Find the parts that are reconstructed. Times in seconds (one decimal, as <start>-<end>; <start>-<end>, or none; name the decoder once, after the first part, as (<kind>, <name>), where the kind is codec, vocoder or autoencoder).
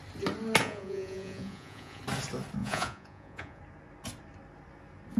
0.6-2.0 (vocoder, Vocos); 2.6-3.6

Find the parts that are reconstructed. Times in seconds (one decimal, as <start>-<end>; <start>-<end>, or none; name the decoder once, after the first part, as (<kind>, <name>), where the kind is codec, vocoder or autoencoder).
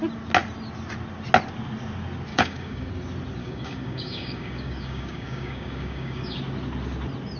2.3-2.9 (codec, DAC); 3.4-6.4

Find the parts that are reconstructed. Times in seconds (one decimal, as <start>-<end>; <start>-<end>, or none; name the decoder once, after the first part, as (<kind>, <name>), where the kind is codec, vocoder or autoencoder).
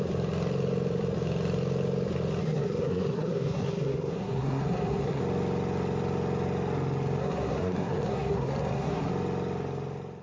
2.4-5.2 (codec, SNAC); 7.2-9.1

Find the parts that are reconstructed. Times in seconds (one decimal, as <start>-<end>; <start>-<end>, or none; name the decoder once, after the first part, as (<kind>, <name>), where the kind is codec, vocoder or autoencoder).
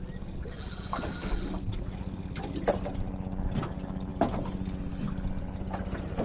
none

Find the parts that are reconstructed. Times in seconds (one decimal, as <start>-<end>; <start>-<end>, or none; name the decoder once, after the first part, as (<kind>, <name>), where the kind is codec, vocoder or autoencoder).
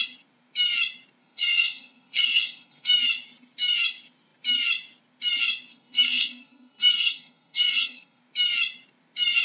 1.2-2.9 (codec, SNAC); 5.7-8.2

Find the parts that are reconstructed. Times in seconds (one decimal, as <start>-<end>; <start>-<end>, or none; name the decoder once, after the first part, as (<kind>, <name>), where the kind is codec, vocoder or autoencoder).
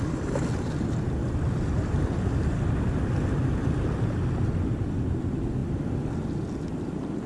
none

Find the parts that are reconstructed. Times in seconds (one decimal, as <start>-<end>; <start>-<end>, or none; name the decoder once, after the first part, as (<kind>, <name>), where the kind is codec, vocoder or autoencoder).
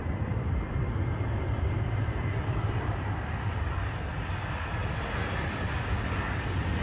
0.0-4.1 (vocoder, BigVGAN v2)